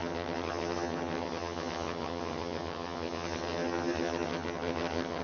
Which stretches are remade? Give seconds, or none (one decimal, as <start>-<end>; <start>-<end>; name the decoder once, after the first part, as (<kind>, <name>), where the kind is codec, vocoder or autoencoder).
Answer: 0.0-5.2 (vocoder, HiFi-GAN)